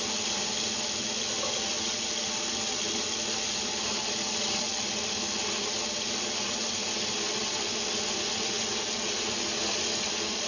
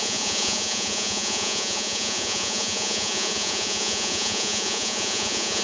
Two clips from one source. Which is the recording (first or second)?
first